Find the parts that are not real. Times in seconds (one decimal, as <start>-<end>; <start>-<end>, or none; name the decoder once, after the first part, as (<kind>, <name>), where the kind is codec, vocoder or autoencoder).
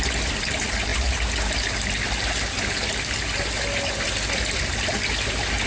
none